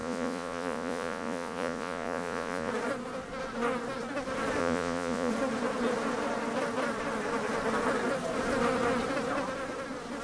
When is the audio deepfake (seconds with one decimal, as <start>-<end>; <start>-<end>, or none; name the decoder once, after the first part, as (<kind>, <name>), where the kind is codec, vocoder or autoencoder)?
0.0-2.7 (vocoder, Vocos); 4.6-5.3